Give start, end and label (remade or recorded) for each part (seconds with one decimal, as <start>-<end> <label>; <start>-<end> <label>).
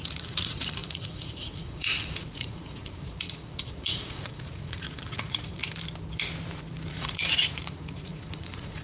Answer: 0.0-5.6 remade; 5.6-6.9 recorded; 6.9-8.8 remade